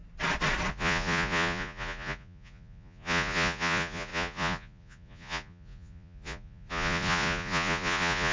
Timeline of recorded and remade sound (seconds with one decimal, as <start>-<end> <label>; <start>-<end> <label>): 0.0-0.7 recorded; 0.7-8.3 remade